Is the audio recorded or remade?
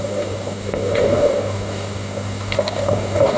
remade